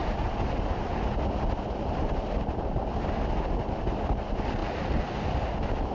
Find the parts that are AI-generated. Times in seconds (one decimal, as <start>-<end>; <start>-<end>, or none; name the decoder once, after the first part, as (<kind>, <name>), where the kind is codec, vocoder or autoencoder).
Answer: none